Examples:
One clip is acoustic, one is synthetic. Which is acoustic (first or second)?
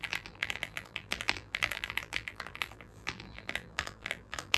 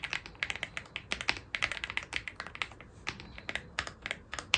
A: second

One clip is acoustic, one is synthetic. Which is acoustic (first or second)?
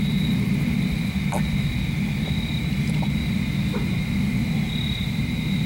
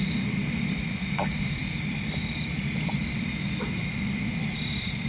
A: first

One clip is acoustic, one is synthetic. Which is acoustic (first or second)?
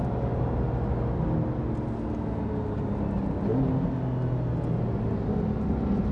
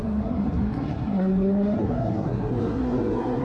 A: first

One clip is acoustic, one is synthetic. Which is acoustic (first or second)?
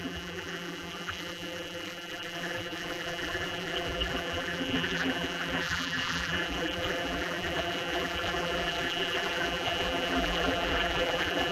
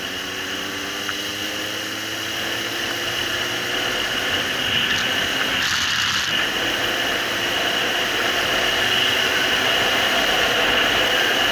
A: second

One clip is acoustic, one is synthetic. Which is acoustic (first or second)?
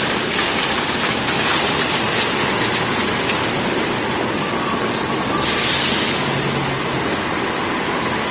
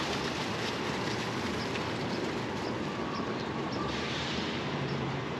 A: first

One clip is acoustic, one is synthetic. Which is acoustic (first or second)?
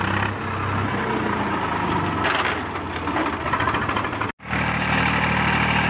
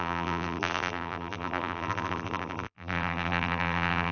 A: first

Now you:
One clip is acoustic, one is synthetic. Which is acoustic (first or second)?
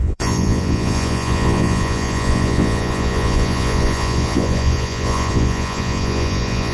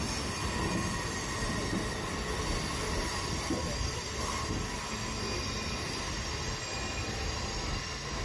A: second